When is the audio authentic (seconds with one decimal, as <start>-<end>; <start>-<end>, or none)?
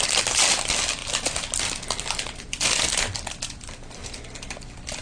1.0-2.4